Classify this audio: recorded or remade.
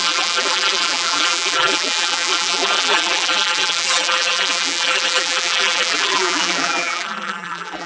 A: remade